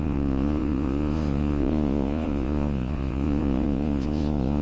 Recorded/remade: remade